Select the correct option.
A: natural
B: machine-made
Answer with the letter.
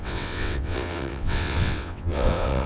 B